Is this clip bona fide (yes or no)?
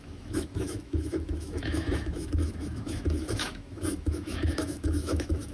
no